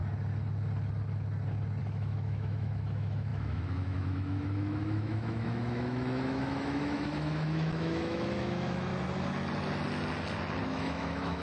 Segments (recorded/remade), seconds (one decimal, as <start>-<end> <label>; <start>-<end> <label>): 0.0-1.8 recorded; 1.8-8.9 remade; 8.9-10.6 recorded; 10.6-11.4 remade